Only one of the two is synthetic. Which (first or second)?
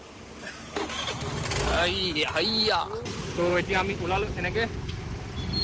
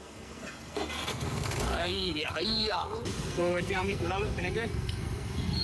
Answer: second